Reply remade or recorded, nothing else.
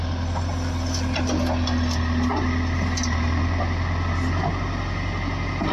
recorded